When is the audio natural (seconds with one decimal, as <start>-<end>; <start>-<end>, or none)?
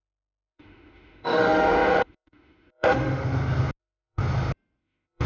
3.2-3.8; 4.2-4.8